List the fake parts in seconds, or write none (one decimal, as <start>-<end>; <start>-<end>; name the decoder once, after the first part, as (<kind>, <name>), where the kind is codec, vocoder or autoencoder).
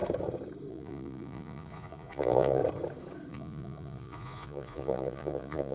0.7-2.6 (vocoder, Vocos); 3.3-5.7